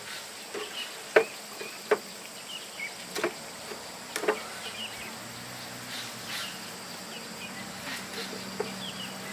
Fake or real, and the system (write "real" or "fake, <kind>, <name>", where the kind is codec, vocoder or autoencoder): real